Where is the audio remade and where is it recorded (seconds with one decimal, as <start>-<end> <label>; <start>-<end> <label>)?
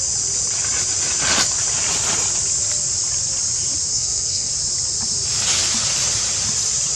0.0-3.9 recorded; 3.9-4.5 remade; 4.5-7.0 recorded